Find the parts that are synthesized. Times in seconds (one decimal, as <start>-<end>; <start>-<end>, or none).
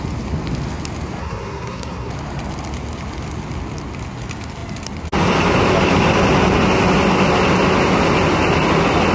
1.2-2.1